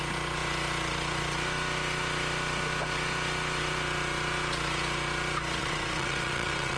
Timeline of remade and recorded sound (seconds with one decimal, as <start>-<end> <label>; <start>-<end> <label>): 0.0-5.6 recorded; 5.6-6.8 remade